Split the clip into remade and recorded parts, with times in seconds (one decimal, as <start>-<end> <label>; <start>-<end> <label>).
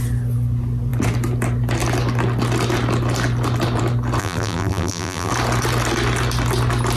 0.0-4.2 recorded; 4.2-5.3 remade; 5.3-7.0 recorded